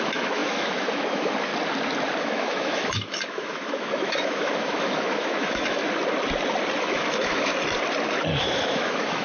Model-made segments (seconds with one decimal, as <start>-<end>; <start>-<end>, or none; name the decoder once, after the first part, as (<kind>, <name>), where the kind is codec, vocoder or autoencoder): 0.0-1.5 (autoencoder, DAC-VAE); 2.2-5.8; 6.8-7.5; 8.4-9.2